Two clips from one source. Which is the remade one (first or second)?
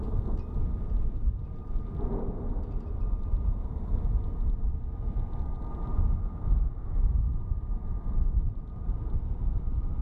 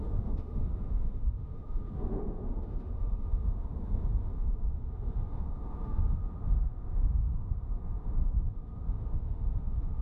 second